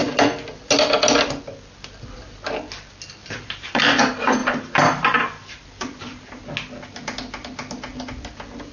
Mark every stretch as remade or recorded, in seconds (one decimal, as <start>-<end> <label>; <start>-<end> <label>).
0.0-3.2 recorded; 3.2-3.8 remade; 3.8-4.4 recorded; 4.4-6.4 remade; 6.4-8.7 recorded